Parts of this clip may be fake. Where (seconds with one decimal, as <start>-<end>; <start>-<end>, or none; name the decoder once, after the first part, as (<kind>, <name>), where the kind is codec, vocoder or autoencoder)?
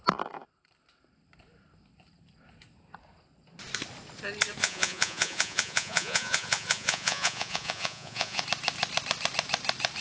4.6-8.4 (vocoder, Vocos)